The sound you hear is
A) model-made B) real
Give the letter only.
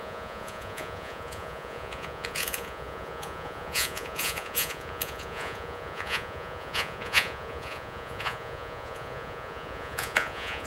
A